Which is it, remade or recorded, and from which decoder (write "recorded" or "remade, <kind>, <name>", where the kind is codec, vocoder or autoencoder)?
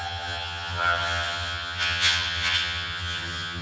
remade, vocoder, HiFi-GAN